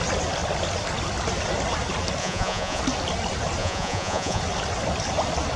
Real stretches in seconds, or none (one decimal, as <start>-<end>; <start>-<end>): 0.0-2.2; 2.8-3.6; 4.4-5.6